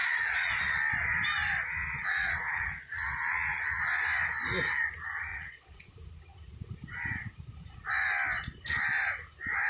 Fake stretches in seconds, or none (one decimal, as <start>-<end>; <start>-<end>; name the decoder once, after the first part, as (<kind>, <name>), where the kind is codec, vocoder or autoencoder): 0.0-0.6 (vocoder, Vocos); 1.8-3.8; 5.3-5.8